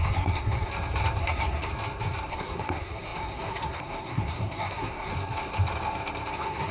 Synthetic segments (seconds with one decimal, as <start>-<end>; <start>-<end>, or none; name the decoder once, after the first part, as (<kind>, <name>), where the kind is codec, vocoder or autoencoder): 0.0-0.7 (codec, SNAC); 1.2-1.7; 2.3-5.1; 6.3-6.7